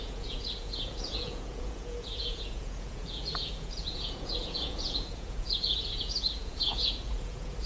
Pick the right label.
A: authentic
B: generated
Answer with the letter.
B